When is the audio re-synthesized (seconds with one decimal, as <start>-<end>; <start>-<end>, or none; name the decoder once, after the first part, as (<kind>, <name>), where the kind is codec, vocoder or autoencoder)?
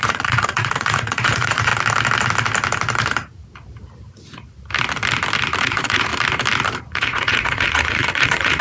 0.0-1.7 (vocoder, Vocos); 5.6-6.1; 6.8-8.6